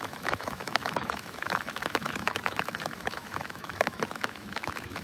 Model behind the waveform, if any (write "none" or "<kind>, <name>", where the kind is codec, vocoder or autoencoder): autoencoder, DAC-VAE